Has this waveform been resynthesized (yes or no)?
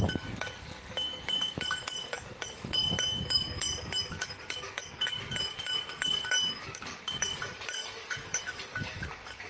yes